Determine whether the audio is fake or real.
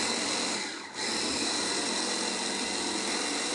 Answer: real